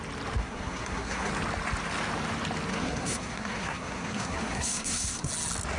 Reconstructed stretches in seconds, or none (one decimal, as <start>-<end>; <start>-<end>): 0.4-1.3; 2.7-5.3